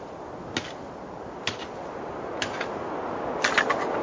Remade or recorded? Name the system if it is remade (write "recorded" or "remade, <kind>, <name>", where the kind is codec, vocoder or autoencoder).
recorded